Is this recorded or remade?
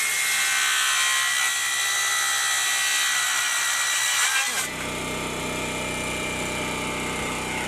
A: recorded